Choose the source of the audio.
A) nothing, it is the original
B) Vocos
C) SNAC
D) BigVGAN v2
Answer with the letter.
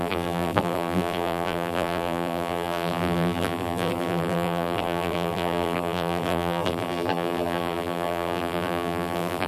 D